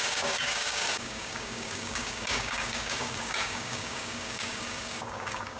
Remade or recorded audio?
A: remade